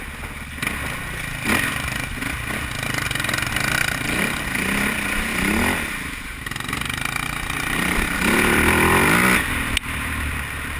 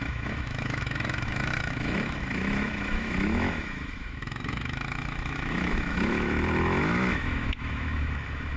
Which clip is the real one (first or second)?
first